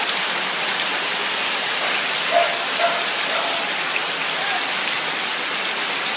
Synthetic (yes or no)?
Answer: no